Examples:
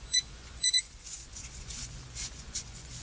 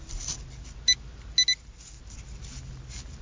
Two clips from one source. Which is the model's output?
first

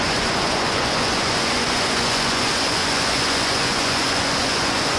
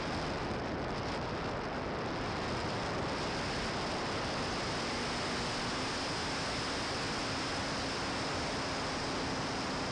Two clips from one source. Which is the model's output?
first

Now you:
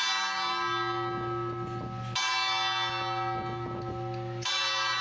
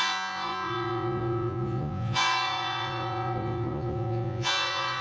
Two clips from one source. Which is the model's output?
second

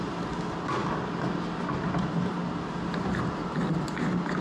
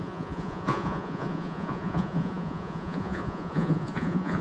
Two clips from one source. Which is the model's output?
second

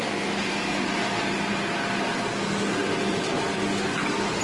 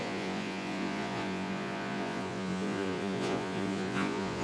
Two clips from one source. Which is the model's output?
second